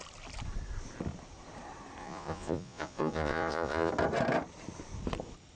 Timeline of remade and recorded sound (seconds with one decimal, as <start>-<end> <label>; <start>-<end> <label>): 0.0-2.0 recorded; 2.0-3.9 remade; 3.9-5.6 recorded